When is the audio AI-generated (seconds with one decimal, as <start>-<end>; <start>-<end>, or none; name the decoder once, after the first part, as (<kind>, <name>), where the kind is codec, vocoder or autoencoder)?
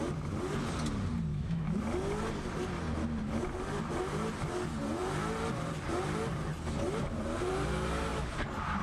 1.3-1.8 (autoencoder, DAC-VAE)